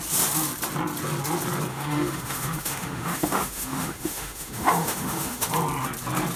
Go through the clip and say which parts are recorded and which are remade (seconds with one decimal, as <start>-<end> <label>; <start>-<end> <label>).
0.0-1.7 recorded; 1.7-5.5 remade; 5.5-6.4 recorded